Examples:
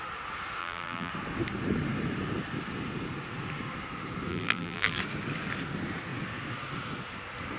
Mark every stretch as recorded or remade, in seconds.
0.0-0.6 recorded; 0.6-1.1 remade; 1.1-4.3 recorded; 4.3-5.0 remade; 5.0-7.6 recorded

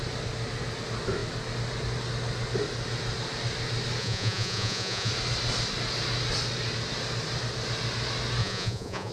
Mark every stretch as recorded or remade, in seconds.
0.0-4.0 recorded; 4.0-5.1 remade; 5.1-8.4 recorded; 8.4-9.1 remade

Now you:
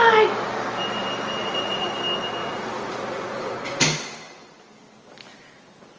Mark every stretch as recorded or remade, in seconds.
0.0-1.4 recorded; 1.4-1.9 remade; 1.9-2.4 recorded; 2.4-3.8 remade; 3.8-6.0 recorded